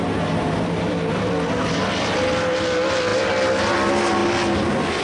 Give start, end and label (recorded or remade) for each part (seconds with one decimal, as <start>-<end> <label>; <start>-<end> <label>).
0.0-5.0 recorded